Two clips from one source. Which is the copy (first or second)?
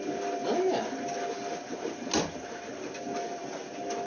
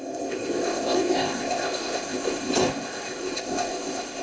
second